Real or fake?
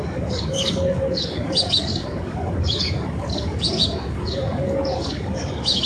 fake